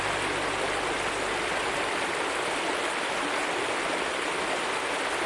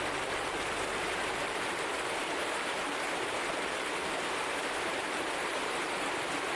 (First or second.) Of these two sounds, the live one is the first